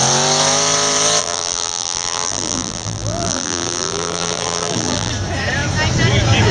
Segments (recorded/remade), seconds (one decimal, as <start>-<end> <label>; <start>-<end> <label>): 0.0-1.2 recorded; 1.2-5.1 remade; 5.1-6.5 recorded